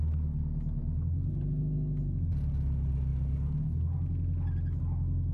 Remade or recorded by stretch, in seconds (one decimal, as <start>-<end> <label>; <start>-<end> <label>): 0.0-5.3 recorded